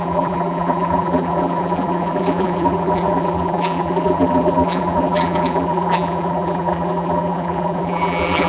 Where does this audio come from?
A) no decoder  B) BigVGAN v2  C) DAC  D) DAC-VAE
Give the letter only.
B